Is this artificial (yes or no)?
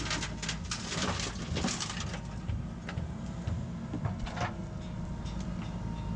no